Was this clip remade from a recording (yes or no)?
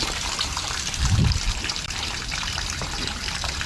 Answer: yes